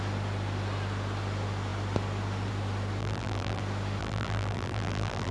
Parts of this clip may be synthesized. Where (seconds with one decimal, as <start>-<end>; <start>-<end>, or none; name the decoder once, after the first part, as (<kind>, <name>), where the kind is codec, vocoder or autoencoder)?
3.0-3.6 (vocoder, BigVGAN v2); 4.0-5.3